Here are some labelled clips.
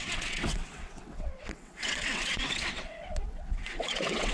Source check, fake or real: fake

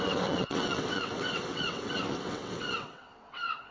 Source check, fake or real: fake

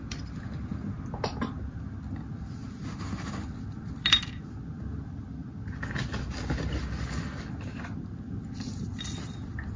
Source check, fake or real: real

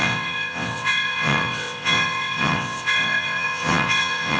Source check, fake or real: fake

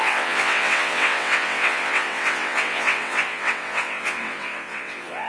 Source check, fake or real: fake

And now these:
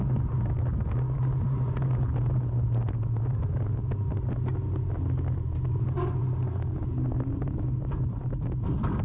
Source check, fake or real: real